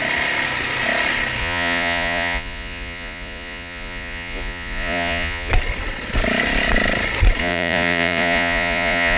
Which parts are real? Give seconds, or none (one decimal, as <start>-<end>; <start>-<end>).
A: 0.0-1.4; 5.5-7.4